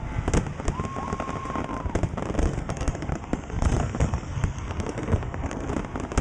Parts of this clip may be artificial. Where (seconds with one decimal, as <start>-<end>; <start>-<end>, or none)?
2.4-5.7